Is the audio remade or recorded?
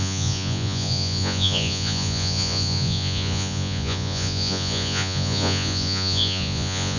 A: remade